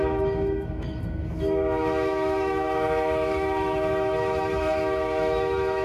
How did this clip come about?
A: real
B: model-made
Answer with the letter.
B